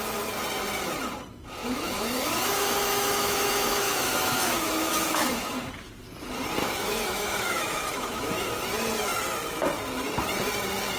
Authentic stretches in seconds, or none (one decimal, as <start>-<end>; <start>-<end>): 0.0-1.6; 5.7-6.6; 8.5-11.0